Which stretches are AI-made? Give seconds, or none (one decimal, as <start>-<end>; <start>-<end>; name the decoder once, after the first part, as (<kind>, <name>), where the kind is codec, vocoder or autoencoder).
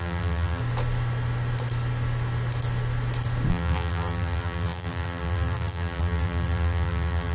0.0-0.6 (vocoder, BigVGAN v2); 3.5-7.3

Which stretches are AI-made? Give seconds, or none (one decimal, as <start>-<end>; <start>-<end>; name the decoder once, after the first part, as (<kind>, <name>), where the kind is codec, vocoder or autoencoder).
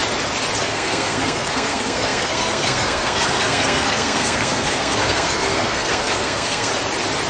0.6-6.7 (codec, SNAC)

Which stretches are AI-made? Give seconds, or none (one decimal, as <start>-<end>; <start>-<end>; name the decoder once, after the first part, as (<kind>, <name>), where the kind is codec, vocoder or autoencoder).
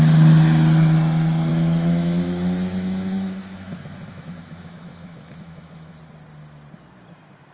1.5-6.0 (autoencoder, DAC-VAE)